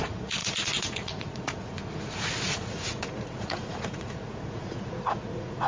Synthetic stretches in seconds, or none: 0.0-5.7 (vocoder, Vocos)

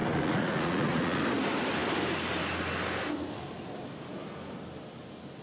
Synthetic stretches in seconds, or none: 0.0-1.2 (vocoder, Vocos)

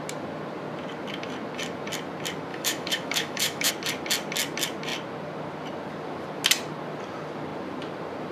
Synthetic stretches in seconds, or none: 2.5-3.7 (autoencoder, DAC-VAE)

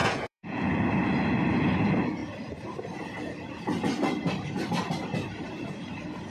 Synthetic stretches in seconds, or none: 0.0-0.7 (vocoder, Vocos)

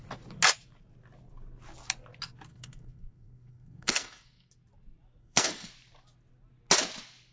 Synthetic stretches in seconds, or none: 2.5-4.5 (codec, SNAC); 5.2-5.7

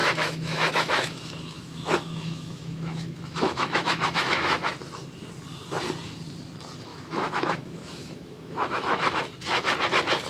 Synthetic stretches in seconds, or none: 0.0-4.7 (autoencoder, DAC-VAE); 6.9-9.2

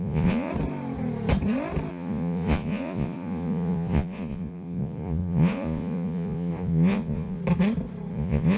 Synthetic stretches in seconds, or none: 0.0-0.5 (vocoder, Vocos); 1.9-7.4; 8.1-8.6